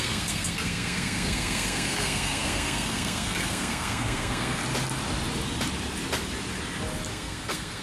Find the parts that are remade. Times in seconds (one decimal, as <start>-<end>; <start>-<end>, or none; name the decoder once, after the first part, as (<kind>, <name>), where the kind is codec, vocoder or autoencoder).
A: 0.0-4.6 (codec, SNAC); 7.1-7.8